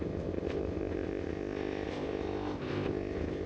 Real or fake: fake